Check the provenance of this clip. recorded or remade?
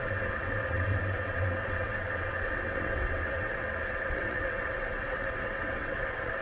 remade